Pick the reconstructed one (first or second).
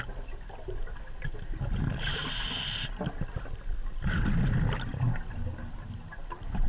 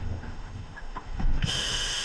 second